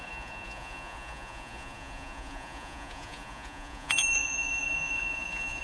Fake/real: fake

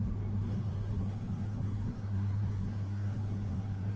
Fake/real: fake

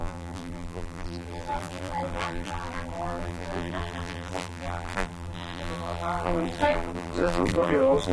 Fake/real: fake